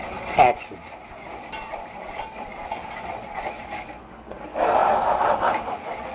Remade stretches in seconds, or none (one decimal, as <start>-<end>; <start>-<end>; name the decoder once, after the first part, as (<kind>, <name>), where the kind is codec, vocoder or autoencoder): 0.0-6.1 (vocoder, BigVGAN v2)